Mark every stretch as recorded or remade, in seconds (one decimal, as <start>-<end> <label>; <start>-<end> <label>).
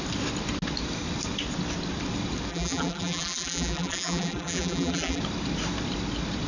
0.0-2.5 recorded; 2.5-5.2 remade; 5.2-6.5 recorded